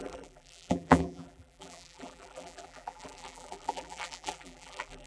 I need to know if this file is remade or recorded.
remade